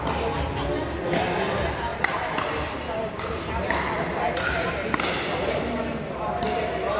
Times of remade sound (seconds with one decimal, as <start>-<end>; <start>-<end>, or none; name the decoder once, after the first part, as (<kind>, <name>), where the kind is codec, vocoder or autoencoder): none